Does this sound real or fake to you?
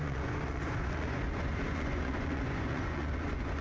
fake